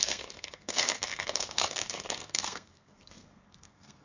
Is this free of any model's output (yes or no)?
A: no